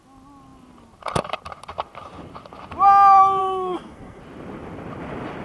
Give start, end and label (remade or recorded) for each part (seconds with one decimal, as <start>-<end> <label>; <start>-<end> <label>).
0.0-3.4 recorded; 3.4-4.2 remade; 4.2-5.4 recorded